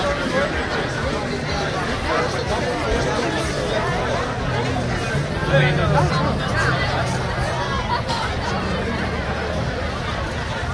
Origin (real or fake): real